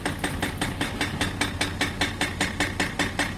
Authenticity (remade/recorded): recorded